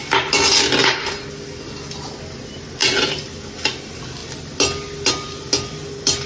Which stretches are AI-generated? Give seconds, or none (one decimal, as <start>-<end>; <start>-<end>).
none

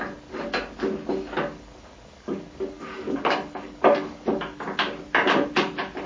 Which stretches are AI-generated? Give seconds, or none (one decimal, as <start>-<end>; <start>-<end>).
1.5-4.6

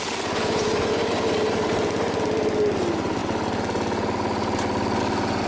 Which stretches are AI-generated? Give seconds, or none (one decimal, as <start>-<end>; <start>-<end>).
none

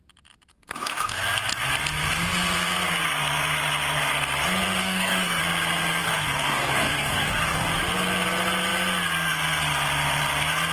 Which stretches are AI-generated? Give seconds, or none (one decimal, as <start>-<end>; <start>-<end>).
0.5-1.2; 4.8-5.4; 6.0-7.8

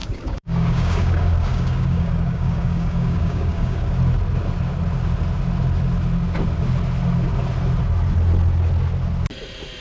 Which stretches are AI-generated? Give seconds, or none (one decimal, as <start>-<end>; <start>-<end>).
0.0-4.0

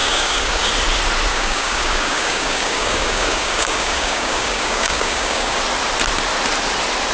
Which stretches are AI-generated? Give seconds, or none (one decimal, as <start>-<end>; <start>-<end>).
0.0-0.7; 1.3-5.6